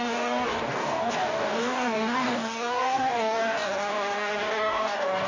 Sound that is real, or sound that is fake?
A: fake